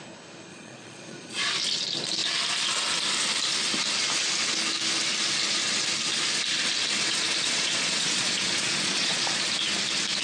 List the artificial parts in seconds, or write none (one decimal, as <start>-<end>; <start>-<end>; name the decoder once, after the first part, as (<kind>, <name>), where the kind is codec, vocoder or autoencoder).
0.5-1.5 (vocoder, Vocos); 7.4-9.5